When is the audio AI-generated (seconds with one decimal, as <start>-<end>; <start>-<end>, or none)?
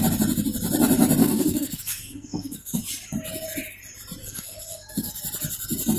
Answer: 1.2-2.8; 4.2-5.2